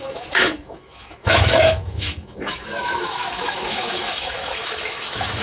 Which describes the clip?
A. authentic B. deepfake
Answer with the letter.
B